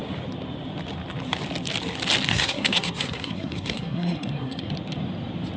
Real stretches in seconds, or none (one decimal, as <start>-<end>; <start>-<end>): 0.0-2.3; 4.7-5.6